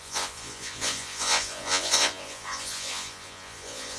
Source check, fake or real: fake